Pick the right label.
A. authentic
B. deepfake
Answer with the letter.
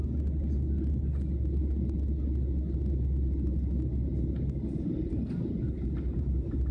A